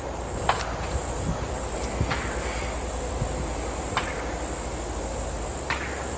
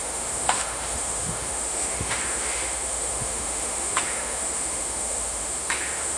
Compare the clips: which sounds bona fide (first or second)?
first